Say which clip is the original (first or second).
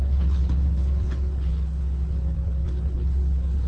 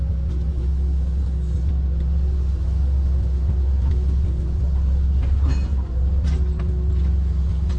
second